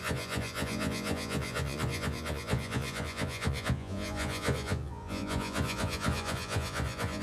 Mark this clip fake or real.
fake